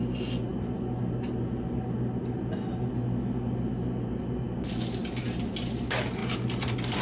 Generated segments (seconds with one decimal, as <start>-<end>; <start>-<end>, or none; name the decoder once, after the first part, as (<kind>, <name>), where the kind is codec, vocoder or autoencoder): none